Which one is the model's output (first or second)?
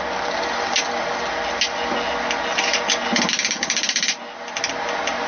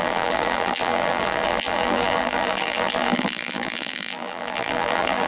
second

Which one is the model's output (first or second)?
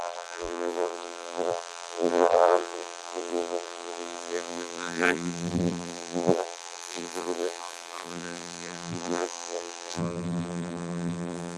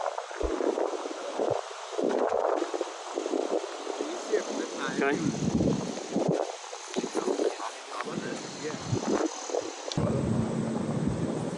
first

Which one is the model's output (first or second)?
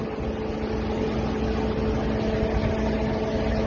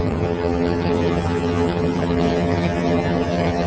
second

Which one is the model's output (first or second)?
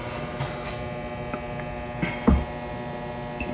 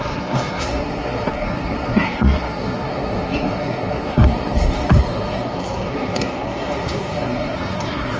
second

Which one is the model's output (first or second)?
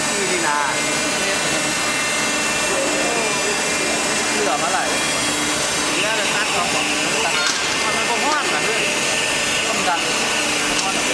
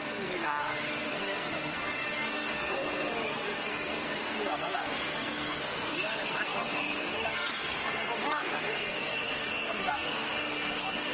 second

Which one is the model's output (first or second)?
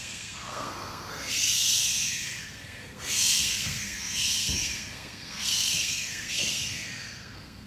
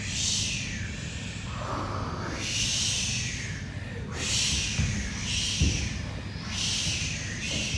first